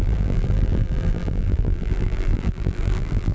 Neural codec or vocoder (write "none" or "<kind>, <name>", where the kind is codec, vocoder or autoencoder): vocoder, BigVGAN v2